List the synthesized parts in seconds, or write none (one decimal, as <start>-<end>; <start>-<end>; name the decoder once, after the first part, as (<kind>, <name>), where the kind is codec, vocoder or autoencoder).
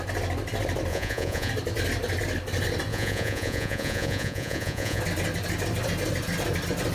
0.9-1.5 (vocoder, Vocos); 2.9-5.0